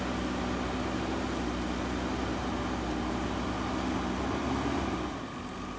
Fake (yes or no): no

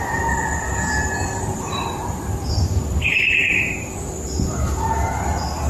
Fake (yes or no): yes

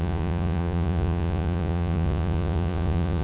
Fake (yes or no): yes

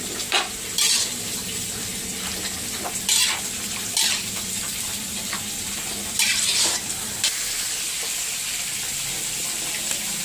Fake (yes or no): no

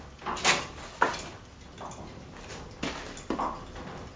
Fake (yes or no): no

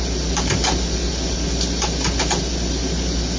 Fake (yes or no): no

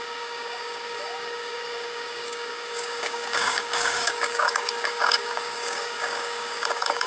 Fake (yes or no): yes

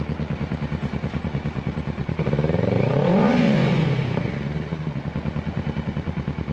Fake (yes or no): yes